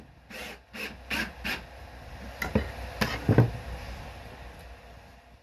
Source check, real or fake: real